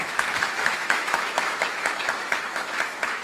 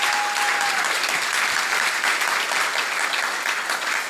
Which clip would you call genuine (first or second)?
second